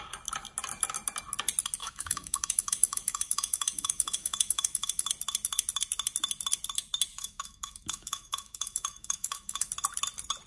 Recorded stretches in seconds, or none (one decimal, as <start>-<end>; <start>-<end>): 0.0-1.8; 5.1-7.1; 9.7-10.5